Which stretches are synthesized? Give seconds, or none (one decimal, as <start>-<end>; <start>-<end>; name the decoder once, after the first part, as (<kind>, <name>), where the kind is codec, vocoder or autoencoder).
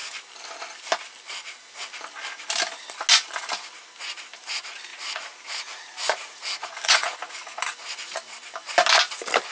4.9-7.2 (vocoder, Vocos)